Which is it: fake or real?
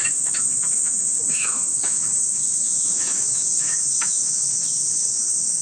fake